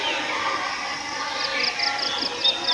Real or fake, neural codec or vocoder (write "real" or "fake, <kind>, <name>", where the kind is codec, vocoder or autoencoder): real